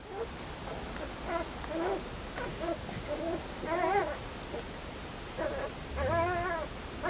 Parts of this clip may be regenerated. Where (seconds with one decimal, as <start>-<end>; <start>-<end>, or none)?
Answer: 2.5-3.4